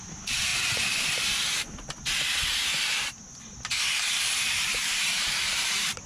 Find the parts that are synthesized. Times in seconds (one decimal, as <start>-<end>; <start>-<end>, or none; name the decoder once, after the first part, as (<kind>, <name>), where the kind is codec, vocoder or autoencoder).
0.0-0.5 (vocoder, BigVGAN v2); 4.2-6.1

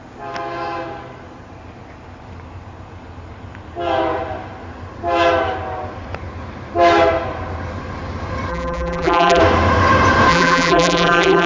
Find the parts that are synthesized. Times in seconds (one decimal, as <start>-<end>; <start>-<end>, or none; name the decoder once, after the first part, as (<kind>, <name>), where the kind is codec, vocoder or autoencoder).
8.5-9.4 (vocoder, BigVGAN v2); 10.3-11.5

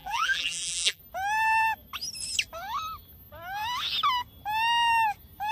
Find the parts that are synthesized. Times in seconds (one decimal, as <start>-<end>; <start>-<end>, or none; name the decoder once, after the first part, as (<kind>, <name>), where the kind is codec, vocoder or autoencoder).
0.0-1.0 (vocoder, BigVGAN v2)

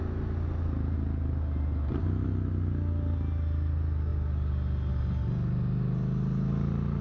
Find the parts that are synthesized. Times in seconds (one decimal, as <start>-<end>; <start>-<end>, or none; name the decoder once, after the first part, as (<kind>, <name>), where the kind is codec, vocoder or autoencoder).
none

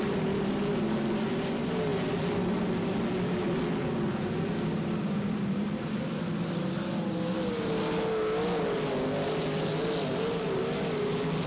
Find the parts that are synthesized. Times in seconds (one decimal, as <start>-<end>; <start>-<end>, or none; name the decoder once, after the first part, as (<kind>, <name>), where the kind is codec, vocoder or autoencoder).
10.1-10.6 (vocoder, BigVGAN v2)